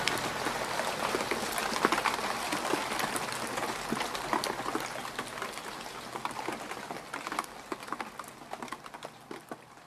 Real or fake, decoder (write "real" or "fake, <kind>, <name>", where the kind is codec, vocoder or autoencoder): real